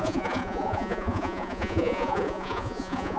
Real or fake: fake